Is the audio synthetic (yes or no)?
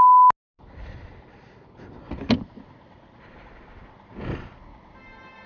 no